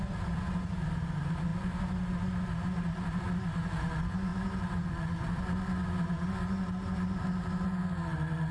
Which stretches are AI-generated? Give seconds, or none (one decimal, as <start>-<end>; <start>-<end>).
none